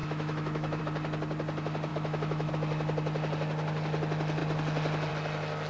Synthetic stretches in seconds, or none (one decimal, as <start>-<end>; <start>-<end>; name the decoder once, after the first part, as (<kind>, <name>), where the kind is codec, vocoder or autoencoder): 0.0-0.8 (autoencoder, DAC-VAE); 1.9-2.5